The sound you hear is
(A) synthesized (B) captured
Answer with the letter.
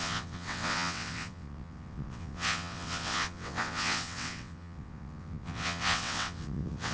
A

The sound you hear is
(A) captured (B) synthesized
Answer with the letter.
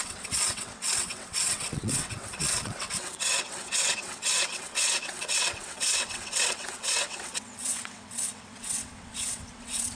B